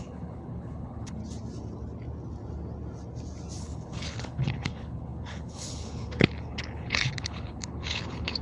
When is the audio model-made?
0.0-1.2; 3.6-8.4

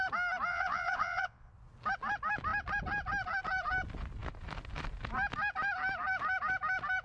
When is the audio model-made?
0.5-1.5

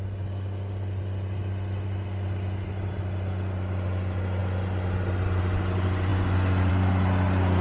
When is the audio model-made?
none